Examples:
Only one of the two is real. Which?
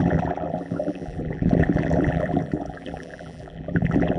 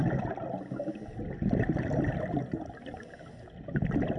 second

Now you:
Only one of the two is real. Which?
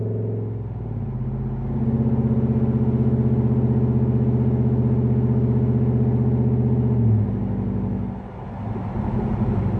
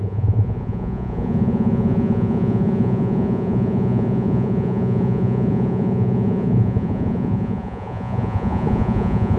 first